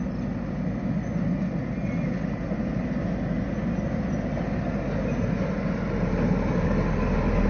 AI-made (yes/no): no